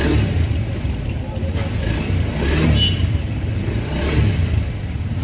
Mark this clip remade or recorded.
recorded